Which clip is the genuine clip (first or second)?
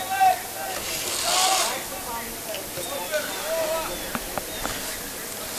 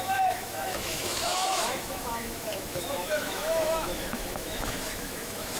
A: first